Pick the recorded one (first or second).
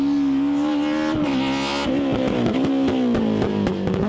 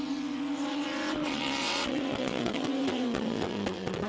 first